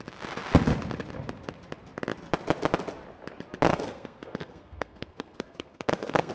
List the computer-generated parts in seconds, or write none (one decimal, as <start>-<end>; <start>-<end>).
3.7-6.3